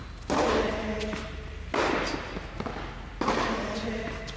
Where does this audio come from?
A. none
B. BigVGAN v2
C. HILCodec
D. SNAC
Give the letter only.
A